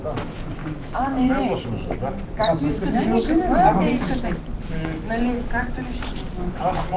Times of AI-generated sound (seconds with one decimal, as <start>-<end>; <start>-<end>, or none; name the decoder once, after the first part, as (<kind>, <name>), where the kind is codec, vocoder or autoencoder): 0.6-1.4 (vocoder, Vocos)